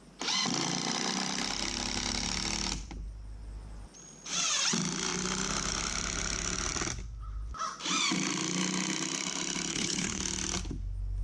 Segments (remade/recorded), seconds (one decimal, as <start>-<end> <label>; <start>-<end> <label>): 0.0-9.7 recorded; 9.7-10.2 remade; 10.2-11.2 recorded